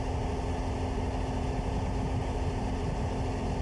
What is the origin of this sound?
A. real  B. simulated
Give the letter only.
A